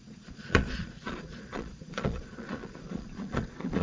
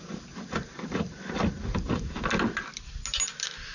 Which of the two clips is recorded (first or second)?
second